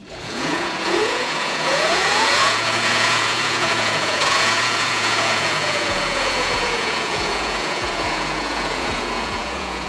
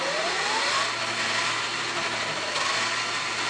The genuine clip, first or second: second